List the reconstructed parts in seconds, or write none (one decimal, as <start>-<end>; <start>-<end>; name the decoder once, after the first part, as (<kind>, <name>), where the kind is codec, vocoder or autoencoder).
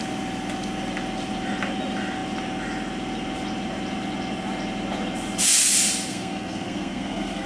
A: 6.1-7.5 (codec, SNAC)